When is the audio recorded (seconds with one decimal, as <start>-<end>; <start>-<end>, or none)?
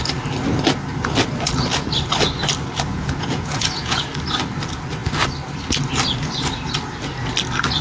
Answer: 0.0-2.9; 4.0-7.8